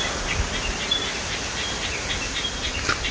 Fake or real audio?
real